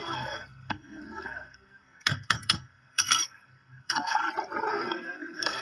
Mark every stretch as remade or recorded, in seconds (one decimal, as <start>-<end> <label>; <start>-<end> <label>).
0.0-4.2 remade; 4.2-4.7 recorded; 4.7-5.6 remade

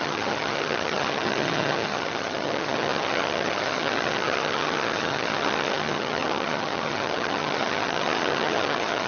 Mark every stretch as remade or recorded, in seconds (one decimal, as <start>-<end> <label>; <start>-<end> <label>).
0.0-9.1 remade

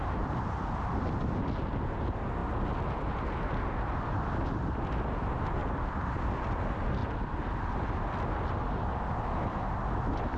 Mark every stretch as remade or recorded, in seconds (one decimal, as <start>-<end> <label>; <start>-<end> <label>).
0.0-10.4 recorded